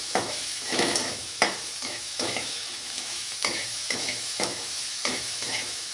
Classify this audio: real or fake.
fake